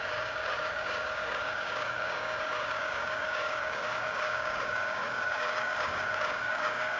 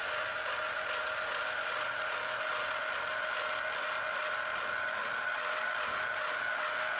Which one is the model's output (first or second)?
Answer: first